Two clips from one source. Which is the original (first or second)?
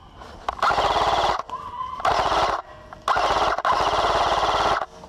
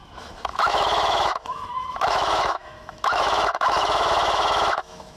first